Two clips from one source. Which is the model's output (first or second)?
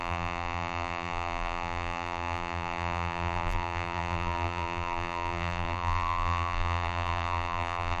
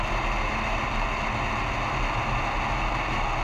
first